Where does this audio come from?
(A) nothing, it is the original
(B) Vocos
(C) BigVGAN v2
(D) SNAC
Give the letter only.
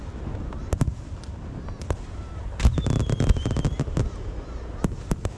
A